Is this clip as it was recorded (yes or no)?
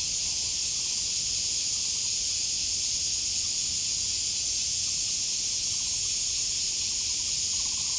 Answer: yes